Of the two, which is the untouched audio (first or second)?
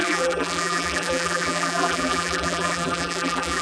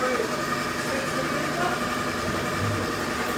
second